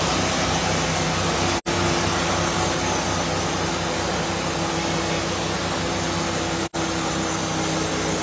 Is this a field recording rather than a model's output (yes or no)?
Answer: yes